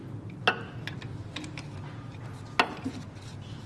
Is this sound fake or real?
real